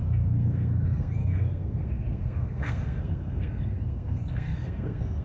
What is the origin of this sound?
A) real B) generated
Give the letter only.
B